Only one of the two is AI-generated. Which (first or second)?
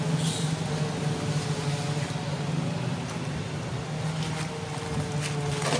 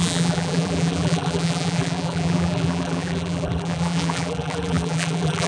second